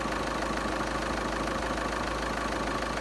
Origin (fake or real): real